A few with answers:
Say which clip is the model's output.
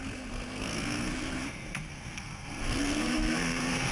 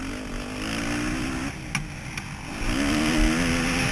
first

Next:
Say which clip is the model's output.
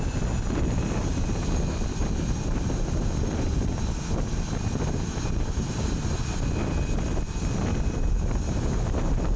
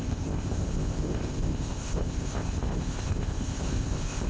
second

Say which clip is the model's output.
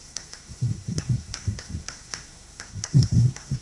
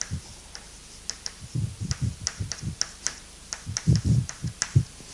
first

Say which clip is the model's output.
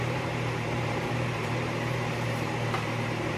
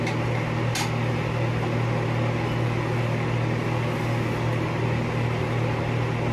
first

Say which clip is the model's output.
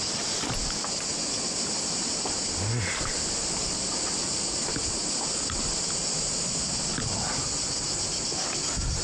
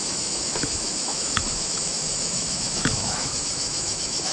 second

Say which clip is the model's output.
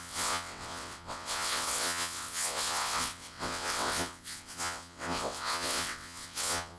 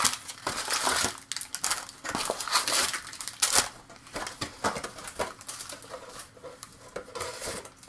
first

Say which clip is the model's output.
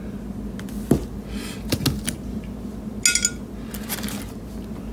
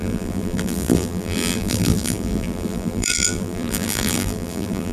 second